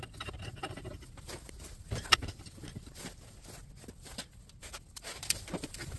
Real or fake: real